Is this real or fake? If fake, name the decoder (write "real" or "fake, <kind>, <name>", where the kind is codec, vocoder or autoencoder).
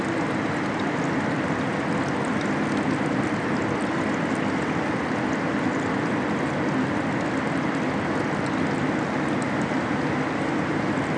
real